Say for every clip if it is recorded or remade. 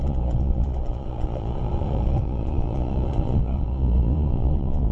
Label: remade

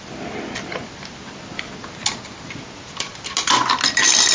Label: recorded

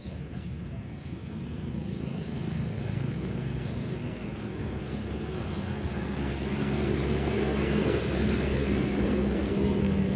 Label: remade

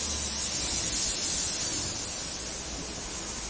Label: recorded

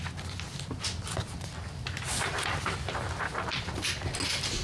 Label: recorded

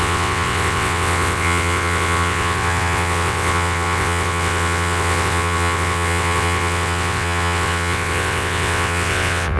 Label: remade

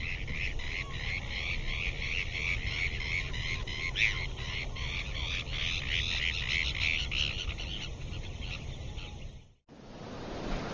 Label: recorded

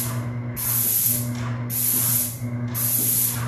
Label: recorded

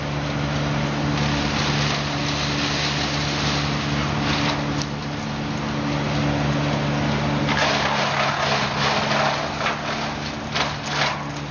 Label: recorded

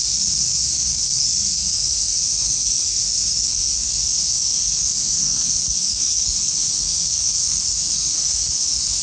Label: remade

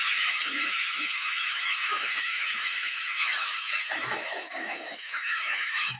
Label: remade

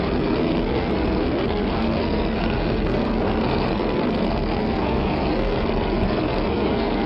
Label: remade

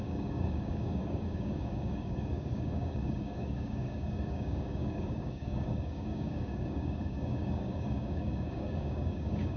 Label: remade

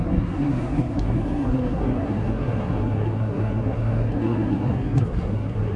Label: remade